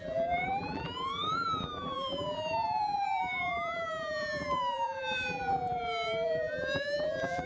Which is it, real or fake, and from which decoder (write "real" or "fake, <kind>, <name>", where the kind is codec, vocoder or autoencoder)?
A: fake, vocoder, BigVGAN v2